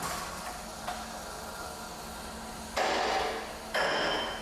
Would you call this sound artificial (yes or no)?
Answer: no